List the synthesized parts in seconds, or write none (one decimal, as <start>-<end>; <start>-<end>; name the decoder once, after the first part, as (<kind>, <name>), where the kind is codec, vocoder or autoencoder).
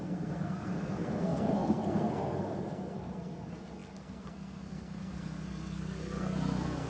0.0-6.9 (codec, SNAC)